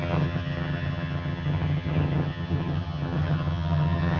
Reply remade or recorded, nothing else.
remade